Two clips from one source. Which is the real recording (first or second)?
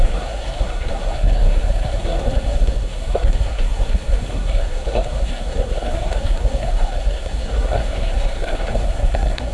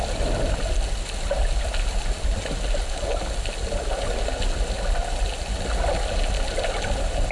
second